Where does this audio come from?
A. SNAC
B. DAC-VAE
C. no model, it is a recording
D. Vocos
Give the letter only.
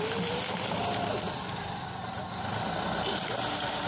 C